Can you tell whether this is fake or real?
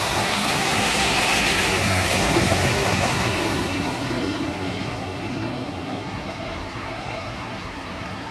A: fake